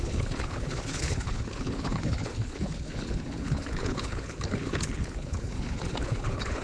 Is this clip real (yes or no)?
no